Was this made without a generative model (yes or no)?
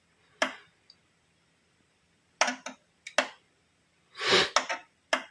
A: yes